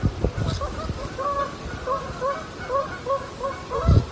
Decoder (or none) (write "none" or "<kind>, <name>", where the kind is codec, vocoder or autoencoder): none